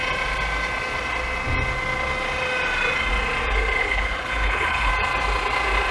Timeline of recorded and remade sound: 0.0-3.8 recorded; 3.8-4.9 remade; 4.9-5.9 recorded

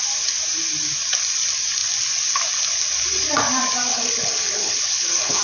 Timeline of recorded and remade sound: 0.0-3.9 recorded; 3.9-5.4 remade

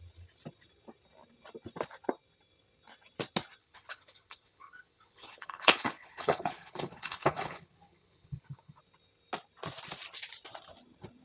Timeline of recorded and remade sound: 0.0-3.6 recorded; 3.6-8.8 remade; 8.8-11.2 recorded